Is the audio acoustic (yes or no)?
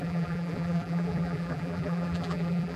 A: no